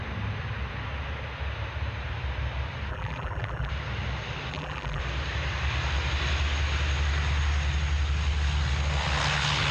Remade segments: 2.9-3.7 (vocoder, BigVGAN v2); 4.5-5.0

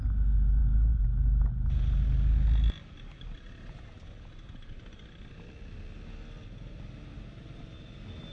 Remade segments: none

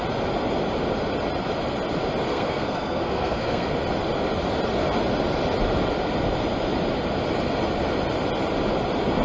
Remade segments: 2.3-3.7 (codec, SNAC)

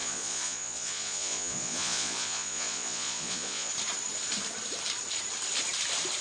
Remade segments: 0.0-3.7 (vocoder, Vocos)

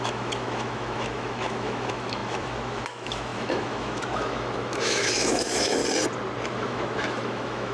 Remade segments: 0.0-5.8 (autoencoder, DAC-VAE); 6.5-7.7

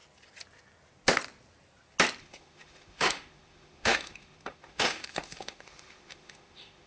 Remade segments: 2.2-6.9 (autoencoder, DAC-VAE)

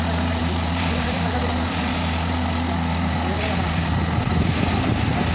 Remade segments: 0.4-1.9 (vocoder, BigVGAN v2)

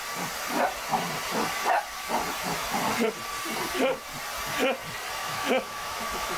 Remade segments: 5.2-6.4 (autoencoder, DAC-VAE)